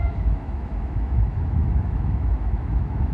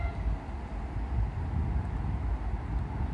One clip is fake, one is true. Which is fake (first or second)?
first